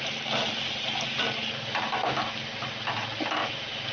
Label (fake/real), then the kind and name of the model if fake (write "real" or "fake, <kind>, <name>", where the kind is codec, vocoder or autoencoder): real